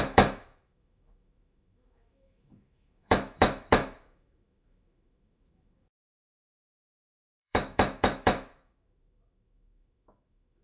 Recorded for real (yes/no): no